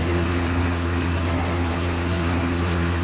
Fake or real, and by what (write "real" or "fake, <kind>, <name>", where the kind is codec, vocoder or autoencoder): fake, codec, SNAC